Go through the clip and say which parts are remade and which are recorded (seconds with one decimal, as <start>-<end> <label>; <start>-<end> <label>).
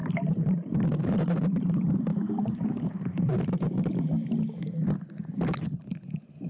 0.0-3.9 remade; 3.9-6.5 recorded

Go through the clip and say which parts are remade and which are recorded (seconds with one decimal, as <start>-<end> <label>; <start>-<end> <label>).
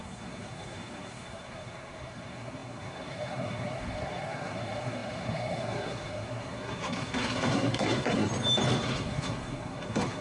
0.0-8.3 remade; 8.3-8.8 recorded; 8.8-10.2 remade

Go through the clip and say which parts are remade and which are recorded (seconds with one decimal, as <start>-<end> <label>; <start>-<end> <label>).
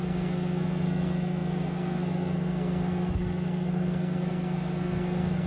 0.0-5.5 remade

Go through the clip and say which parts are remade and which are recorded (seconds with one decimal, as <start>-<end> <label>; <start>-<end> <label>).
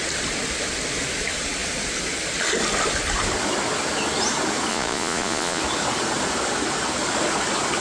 0.0-4.7 recorded; 4.7-5.6 remade; 5.6-7.8 recorded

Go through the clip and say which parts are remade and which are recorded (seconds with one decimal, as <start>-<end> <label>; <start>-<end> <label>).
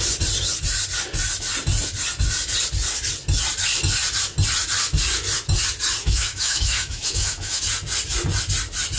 0.0-6.0 recorded; 6.0-7.6 remade; 7.6-9.0 recorded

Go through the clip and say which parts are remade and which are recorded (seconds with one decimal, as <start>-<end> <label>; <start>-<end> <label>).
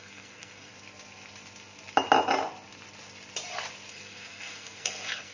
0.0-0.7 remade; 0.7-3.9 recorded; 3.9-5.3 remade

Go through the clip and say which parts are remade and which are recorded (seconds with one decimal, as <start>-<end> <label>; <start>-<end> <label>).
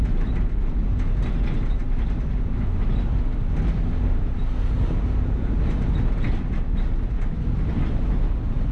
0.0-8.7 recorded